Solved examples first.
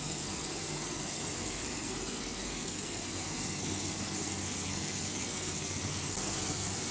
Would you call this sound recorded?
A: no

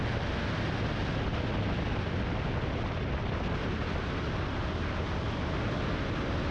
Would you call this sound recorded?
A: yes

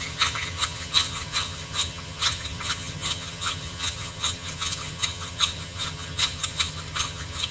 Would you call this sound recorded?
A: no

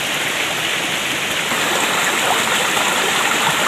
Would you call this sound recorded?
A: yes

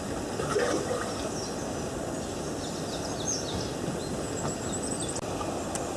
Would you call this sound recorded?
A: yes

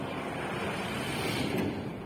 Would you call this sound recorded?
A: yes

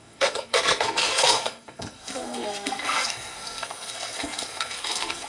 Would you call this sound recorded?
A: no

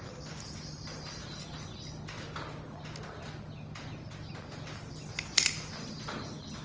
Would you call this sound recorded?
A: yes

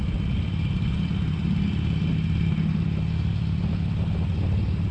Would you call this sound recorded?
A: no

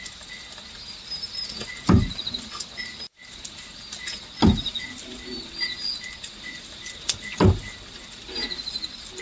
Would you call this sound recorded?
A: yes